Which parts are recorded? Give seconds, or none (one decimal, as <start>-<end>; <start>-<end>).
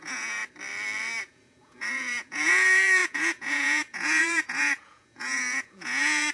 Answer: 0.4-1.2